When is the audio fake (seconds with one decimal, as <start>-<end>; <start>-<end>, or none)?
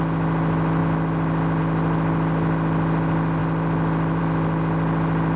none